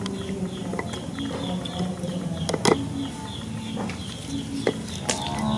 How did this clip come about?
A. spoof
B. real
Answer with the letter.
B